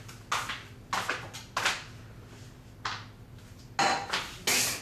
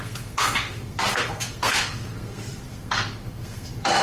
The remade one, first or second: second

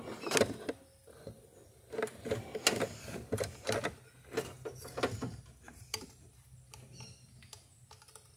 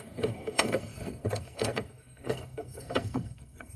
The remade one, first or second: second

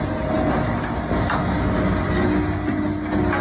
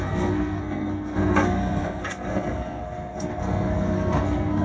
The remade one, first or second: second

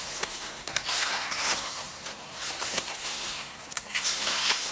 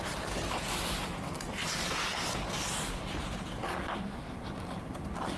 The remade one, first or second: first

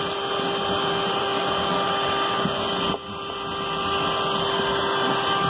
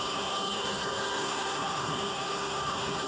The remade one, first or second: second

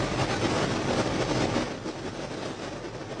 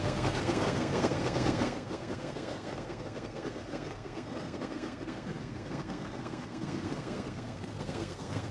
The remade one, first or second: second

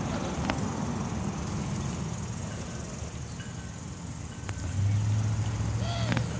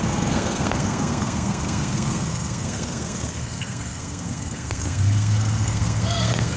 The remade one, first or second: second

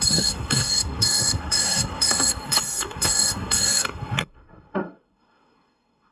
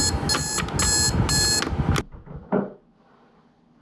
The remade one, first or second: first